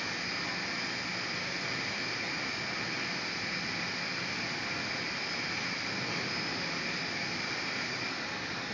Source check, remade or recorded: recorded